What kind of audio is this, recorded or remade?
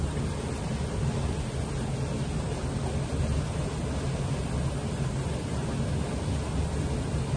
recorded